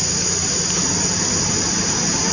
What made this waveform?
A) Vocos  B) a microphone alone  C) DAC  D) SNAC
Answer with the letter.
B